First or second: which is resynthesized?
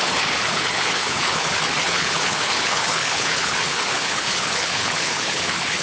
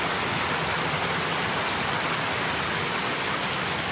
first